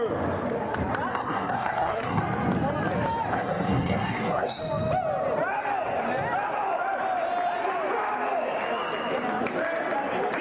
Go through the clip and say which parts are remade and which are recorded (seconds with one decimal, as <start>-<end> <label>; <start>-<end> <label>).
0.0-1.1 recorded; 1.1-2.2 remade; 2.2-3.3 recorded; 3.3-4.6 remade; 4.6-10.4 recorded